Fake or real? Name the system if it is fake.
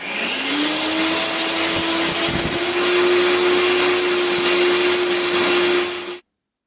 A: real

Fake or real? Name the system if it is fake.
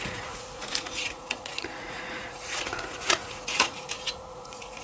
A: fake, vocoder, Vocos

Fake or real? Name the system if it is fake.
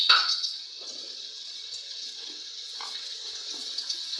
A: fake, vocoder, WaveNeXt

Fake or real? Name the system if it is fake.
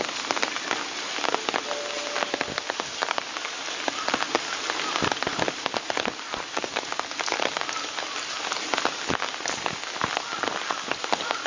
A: real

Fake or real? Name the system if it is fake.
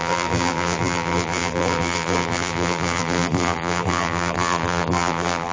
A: fake, vocoder, BigVGAN v2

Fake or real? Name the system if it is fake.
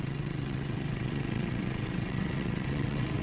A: fake, vocoder, WaveNeXt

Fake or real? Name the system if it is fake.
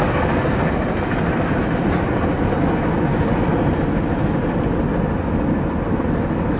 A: real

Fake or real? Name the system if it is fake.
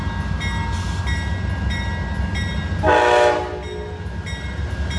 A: real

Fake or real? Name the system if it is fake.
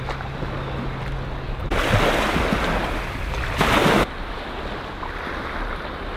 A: real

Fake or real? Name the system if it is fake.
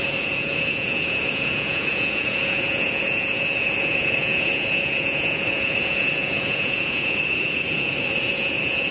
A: fake, vocoder, Vocos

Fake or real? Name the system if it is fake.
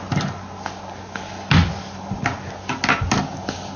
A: real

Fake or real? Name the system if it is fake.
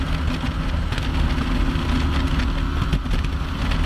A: real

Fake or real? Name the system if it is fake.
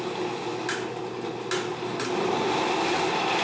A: real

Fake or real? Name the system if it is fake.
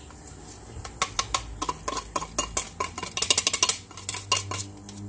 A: real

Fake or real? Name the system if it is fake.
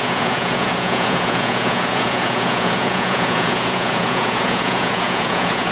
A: fake, vocoder, Vocos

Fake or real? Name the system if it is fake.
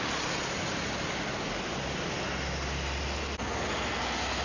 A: real